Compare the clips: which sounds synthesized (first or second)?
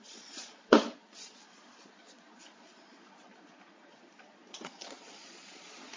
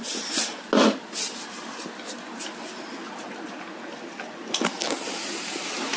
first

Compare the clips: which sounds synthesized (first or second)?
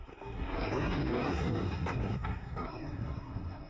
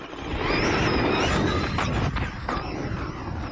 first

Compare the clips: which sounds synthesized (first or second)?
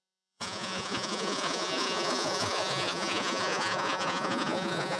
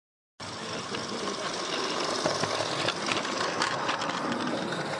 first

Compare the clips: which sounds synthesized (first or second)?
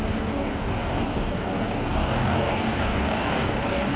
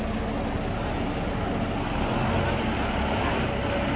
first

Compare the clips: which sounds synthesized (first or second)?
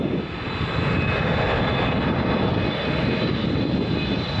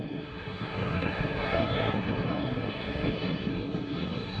second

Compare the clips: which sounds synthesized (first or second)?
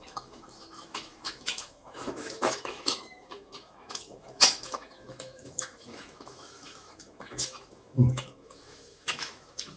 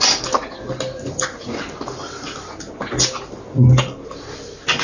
first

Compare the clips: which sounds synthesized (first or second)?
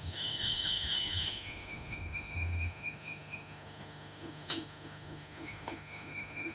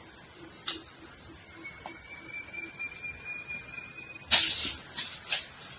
first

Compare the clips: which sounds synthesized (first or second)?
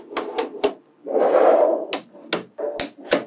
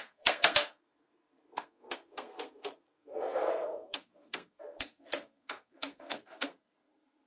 second